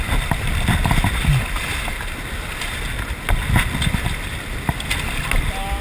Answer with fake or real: real